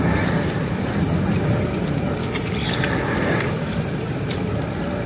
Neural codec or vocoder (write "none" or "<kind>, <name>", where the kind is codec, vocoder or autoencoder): none